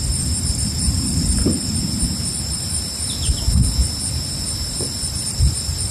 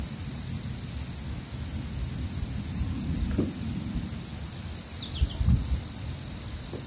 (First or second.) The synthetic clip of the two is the first